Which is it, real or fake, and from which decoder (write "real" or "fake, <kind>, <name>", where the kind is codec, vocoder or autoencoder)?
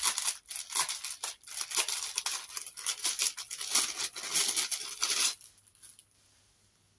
real